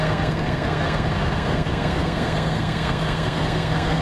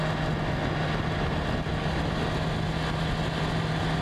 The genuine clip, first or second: second